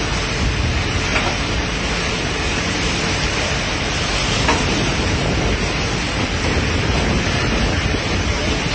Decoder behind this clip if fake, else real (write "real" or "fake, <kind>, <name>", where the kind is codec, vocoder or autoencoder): real